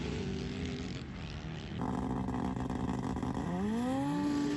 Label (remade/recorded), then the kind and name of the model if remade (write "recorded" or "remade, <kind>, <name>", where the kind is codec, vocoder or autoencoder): recorded